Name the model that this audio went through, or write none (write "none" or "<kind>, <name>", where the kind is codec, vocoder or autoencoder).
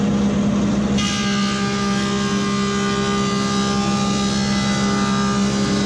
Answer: none